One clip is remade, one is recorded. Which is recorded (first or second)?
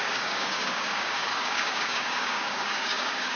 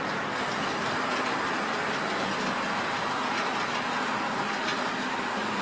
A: second